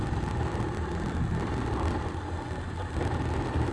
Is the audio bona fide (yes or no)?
yes